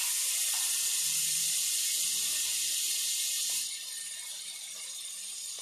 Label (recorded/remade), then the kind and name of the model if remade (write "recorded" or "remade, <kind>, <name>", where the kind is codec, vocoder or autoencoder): remade, vocoder, BigVGAN v2